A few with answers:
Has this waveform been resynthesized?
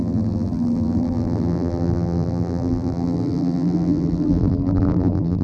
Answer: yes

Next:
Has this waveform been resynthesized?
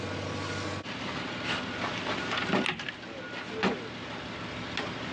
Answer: no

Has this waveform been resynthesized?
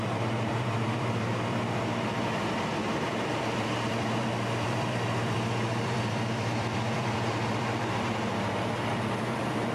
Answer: yes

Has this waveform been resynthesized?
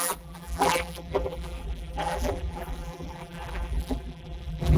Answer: yes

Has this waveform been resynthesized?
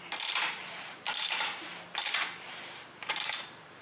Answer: yes